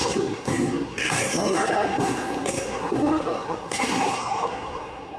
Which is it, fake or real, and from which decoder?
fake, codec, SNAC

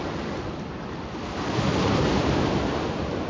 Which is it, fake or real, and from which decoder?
real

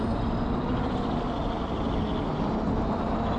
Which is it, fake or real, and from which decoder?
real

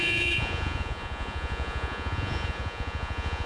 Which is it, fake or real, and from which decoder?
fake, vocoder, Vocos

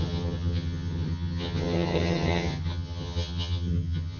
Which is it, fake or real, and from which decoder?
fake, vocoder, HiFi-GAN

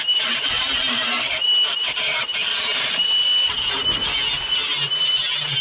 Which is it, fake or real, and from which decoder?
real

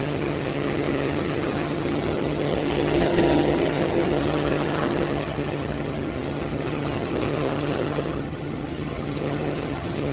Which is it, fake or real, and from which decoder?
fake, vocoder, HiFi-GAN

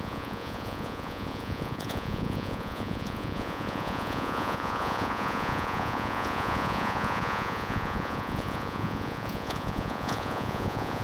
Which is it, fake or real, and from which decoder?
fake, vocoder, Vocos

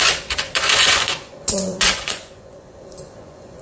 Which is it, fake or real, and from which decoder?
fake, vocoder, Vocos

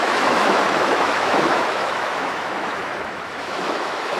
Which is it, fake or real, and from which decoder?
fake, autoencoder, DAC-VAE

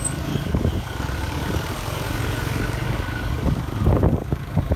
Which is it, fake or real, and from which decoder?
fake, codec, DAC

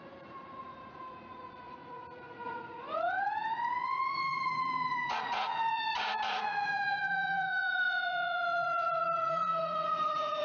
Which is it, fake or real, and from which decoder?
fake, vocoder, Vocos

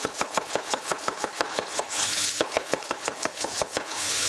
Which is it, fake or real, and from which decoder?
fake, codec, HILCodec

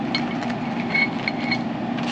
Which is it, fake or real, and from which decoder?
real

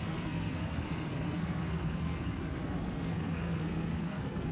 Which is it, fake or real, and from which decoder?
fake, codec, SNAC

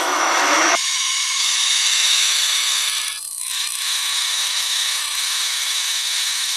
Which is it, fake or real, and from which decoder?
fake, autoencoder, DAC-VAE